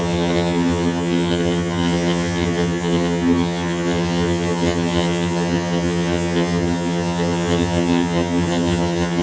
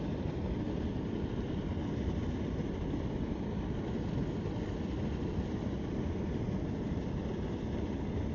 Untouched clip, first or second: second